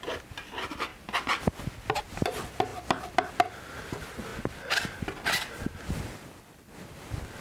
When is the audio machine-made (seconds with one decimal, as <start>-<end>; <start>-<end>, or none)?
none